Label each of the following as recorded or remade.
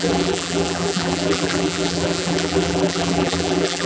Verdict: remade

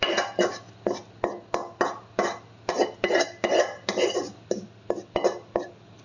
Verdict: recorded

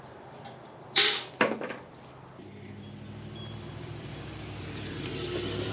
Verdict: remade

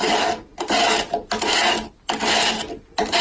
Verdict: recorded